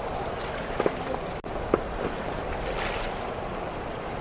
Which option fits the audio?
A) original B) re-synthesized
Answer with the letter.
A